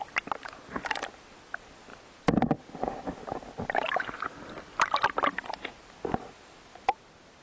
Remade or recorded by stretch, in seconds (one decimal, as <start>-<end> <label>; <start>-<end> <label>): 0.0-7.4 recorded